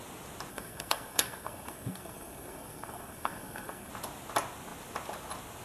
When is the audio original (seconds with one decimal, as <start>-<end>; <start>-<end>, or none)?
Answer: 0.0-0.5; 3.9-5.6